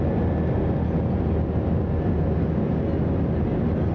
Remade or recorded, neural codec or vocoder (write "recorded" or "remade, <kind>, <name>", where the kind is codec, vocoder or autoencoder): recorded